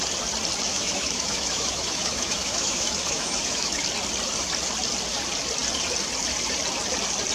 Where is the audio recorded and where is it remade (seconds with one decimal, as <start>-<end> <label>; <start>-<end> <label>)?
0.0-0.7 recorded; 0.7-3.8 remade; 3.8-7.3 recorded